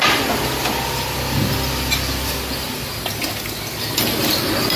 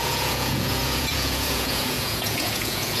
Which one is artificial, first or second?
second